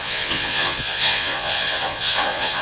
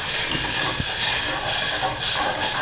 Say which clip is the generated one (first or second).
first